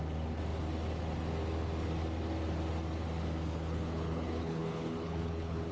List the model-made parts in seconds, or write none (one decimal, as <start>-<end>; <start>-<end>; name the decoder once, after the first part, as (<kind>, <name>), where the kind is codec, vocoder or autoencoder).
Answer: 3.5-5.7 (codec, HILCodec)